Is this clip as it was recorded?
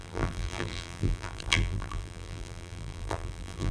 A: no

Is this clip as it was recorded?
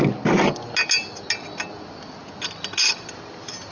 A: yes